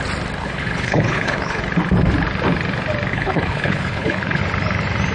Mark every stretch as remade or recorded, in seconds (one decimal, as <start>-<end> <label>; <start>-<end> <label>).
0.0-0.4 recorded; 0.4-1.6 remade; 1.6-3.1 recorded; 3.1-4.4 remade; 4.4-5.1 recorded